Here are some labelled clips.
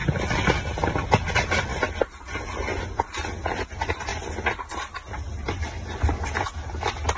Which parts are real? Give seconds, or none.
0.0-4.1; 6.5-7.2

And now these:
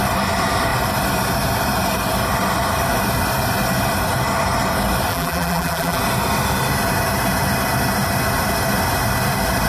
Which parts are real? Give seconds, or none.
0.0-5.1; 6.0-9.7

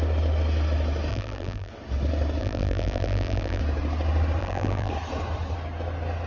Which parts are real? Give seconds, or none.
0.0-1.1; 1.7-2.4; 3.6-4.4; 4.9-6.3

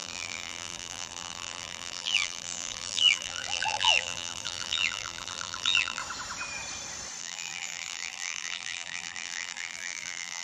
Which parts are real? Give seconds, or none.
6.0-7.2

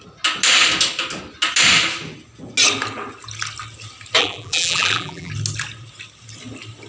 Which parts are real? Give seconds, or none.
0.0-4.2; 5.3-6.9

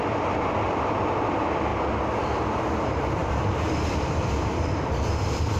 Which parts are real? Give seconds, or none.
0.0-3.2; 5.0-5.6

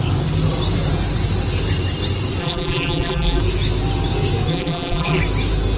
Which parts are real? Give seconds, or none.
0.0-2.4; 3.4-4.5; 5.2-5.8

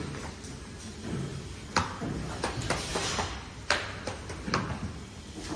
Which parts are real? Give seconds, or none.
0.0-5.6